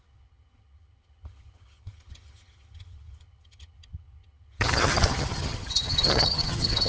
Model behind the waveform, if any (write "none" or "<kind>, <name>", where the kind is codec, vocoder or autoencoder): vocoder, HiFi-GAN